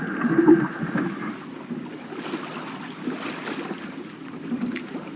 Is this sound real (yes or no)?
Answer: yes